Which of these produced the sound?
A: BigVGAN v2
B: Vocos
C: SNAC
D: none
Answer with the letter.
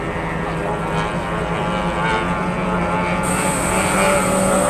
D